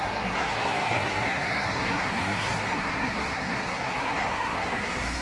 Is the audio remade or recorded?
remade